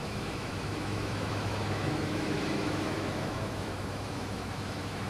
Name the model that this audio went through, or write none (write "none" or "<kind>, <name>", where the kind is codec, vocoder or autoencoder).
autoencoder, DAC-VAE